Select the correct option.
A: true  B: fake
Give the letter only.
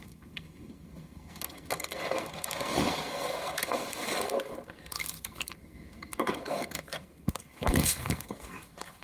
B